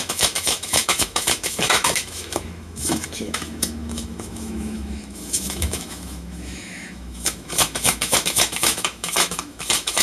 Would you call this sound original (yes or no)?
no